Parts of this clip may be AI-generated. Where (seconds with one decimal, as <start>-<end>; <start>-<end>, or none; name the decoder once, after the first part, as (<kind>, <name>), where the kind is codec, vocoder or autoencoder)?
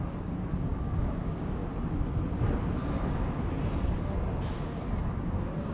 0.0-1.6 (codec, DAC); 5.0-5.7